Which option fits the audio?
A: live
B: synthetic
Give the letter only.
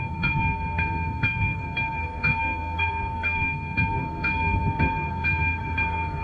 B